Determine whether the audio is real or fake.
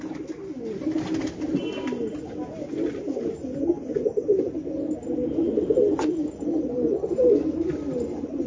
real